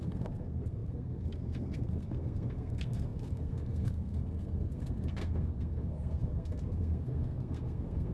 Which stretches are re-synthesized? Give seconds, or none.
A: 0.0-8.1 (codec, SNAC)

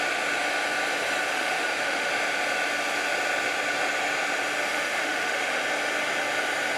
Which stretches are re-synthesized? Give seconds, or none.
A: 1.3-2.1 (autoencoder, DAC-VAE); 4.7-5.6

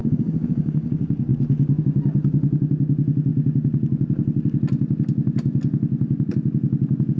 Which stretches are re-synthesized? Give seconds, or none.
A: 0.0-0.9 (codec, DAC)

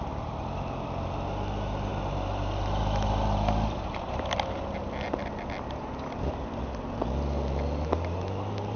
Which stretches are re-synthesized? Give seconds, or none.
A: none